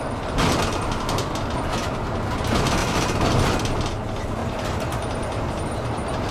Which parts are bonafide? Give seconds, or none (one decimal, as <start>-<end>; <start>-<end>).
0.0-4.4